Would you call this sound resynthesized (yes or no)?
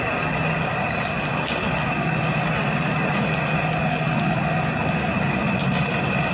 no